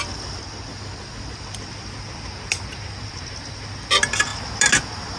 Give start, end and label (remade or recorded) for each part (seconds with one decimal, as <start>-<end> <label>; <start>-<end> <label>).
0.0-5.2 recorded